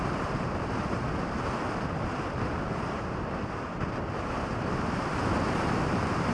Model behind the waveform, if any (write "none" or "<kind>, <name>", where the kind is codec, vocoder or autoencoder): vocoder, BigVGAN v2